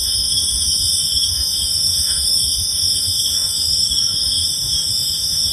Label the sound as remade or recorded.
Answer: remade